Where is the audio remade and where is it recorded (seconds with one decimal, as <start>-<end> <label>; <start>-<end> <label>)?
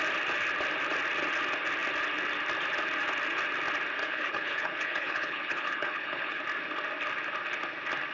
0.0-4.0 recorded; 4.0-6.4 remade; 6.4-8.1 recorded